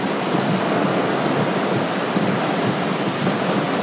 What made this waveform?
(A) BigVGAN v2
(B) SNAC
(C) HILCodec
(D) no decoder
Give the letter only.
D